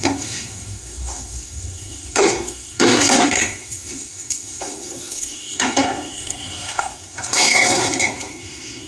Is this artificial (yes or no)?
yes